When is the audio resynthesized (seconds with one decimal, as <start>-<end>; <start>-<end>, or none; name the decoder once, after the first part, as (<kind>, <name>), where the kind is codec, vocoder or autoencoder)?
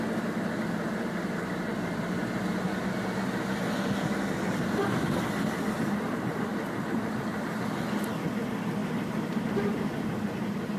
0.0-1.7 (vocoder, BigVGAN v2); 6.0-6.5; 7.1-10.8